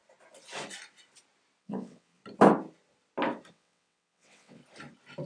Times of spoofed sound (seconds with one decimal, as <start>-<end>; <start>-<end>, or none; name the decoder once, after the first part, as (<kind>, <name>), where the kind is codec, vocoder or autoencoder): 1.6-2.2 (vocoder, WaveNeXt); 3.5-4.6